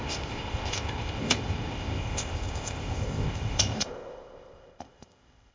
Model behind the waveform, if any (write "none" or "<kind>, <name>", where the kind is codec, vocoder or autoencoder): codec, ZipCodec